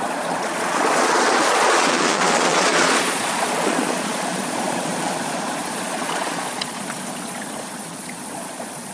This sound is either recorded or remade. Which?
remade